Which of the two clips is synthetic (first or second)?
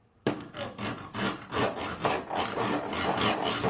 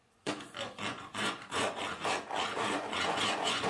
second